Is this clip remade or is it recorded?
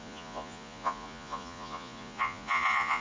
remade